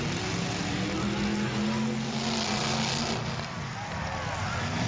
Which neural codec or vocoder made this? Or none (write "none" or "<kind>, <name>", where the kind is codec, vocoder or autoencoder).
none